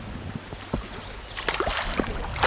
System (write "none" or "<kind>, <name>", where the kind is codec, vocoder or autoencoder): none